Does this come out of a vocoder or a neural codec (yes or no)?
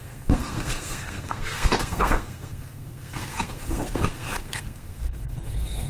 yes